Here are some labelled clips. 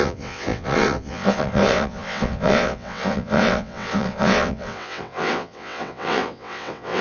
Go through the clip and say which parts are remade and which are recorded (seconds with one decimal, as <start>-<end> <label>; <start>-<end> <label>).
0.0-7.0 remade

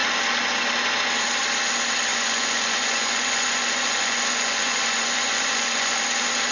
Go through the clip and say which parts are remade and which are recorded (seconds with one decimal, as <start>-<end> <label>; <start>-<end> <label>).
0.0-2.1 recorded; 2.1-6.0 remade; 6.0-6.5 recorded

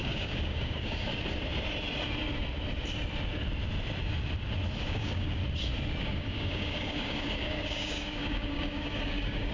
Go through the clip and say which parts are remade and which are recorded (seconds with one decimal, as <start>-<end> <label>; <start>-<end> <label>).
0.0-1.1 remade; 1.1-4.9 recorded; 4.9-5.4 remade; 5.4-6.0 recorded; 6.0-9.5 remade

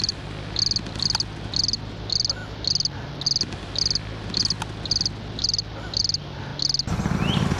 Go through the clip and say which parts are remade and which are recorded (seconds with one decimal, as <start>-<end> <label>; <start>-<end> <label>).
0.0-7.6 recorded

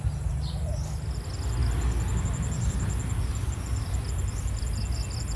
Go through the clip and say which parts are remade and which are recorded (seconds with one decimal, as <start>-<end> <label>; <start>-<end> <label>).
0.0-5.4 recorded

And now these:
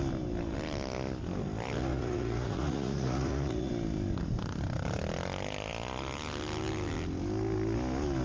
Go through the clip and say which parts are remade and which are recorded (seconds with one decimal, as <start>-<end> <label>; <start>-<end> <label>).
0.0-1.9 recorded; 1.9-3.7 remade; 3.7-8.2 recorded